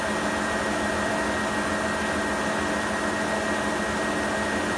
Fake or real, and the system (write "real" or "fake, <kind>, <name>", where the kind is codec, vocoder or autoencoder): real